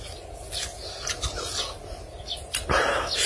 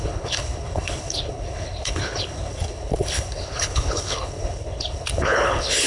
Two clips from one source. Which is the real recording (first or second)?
first